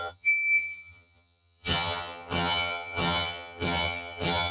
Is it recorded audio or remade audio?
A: remade